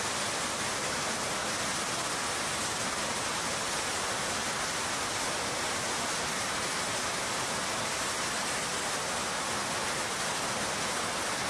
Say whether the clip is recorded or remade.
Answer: recorded